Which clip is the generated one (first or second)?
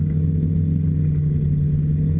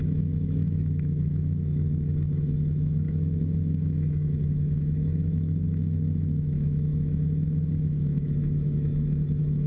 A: second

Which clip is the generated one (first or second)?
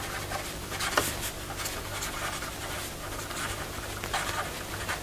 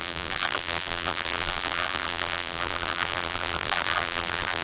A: second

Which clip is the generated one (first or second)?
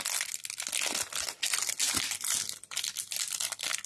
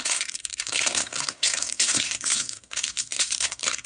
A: second